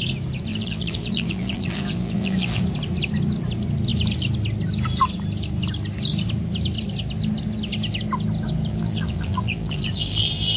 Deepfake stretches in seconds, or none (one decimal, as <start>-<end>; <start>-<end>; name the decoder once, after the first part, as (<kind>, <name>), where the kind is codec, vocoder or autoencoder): 0.5-2.6 (vocoder, BigVGAN v2); 8.7-10.6